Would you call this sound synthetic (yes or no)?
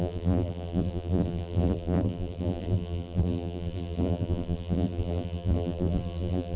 yes